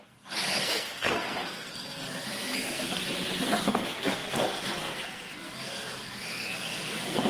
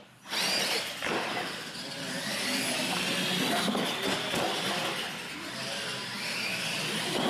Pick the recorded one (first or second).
second